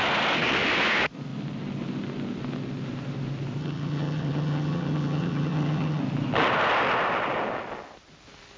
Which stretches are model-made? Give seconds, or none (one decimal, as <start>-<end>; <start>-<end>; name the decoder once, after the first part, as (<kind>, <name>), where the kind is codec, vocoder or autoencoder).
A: 3.6-6.0 (vocoder, HiFi-GAN)